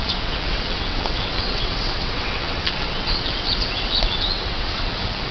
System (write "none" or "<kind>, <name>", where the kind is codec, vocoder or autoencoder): vocoder, WaveNeXt